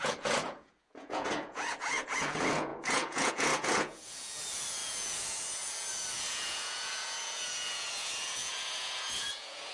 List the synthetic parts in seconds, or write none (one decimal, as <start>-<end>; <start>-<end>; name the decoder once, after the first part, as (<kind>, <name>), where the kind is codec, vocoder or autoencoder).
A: 0.0-9.7 (vocoder, Vocos)